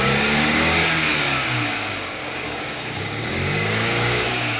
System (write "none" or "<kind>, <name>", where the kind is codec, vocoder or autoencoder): codec, DAC